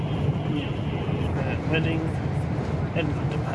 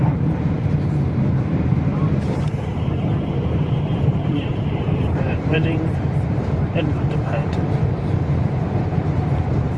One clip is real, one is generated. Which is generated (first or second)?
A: second